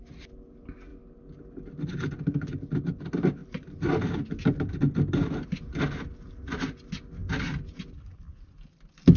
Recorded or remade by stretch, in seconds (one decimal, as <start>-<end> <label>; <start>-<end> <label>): 0.0-9.2 recorded